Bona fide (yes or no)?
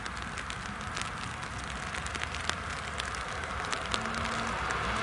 yes